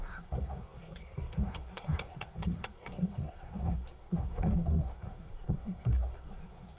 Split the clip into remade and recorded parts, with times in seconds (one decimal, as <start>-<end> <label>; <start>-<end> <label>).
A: 0.0-6.8 remade